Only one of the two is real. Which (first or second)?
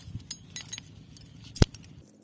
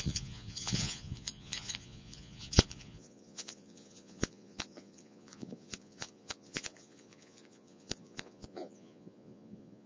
first